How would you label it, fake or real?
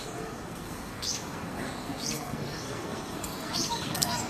fake